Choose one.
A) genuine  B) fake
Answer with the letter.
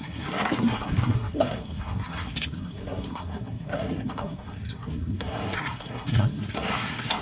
B